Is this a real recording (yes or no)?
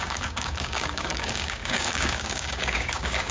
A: no